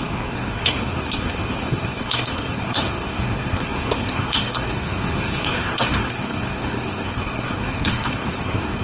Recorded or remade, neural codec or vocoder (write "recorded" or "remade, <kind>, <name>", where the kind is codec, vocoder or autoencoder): remade, codec, SNAC